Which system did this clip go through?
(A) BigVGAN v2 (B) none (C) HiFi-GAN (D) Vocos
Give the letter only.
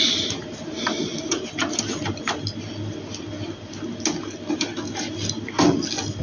B